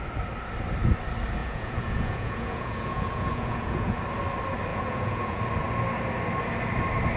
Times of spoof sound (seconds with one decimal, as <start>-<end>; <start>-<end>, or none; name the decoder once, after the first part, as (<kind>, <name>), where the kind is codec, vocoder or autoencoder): 1.4-4.0 (vocoder, Vocos); 4.7-5.4